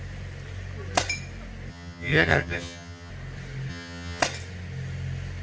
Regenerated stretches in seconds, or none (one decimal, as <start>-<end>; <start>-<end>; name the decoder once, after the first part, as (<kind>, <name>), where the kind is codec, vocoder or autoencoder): 1.7-3.1 (vocoder, HiFi-GAN); 3.7-4.2